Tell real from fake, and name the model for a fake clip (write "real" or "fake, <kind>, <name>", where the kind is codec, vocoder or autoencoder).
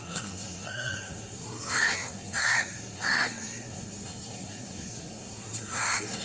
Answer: fake, codec, SNAC